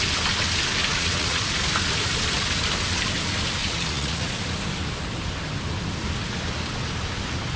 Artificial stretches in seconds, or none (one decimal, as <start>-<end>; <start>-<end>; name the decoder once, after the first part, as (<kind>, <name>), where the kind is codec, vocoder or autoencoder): 0.9-1.4 (vocoder, Vocos); 3.6-4.3